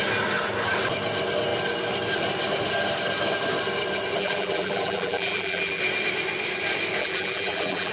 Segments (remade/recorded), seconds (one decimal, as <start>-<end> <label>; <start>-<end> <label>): 0.0-4.2 recorded; 4.2-5.8 remade; 5.8-7.0 recorded; 7.0-7.9 remade